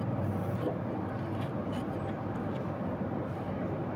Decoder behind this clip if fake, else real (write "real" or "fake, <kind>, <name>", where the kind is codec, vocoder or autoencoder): real